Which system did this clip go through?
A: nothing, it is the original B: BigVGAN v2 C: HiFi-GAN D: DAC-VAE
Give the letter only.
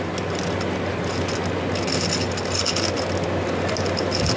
A